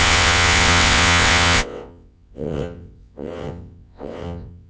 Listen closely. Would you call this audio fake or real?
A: fake